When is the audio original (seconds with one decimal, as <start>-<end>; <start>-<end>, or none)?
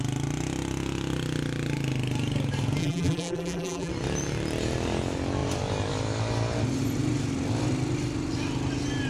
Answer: 0.0-2.8; 3.9-9.1